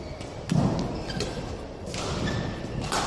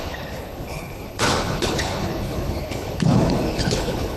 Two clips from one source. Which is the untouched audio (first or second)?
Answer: first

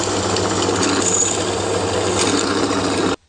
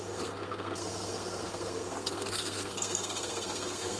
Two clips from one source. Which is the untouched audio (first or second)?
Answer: first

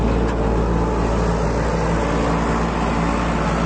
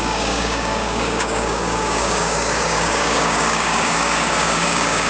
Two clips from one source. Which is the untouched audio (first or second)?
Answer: first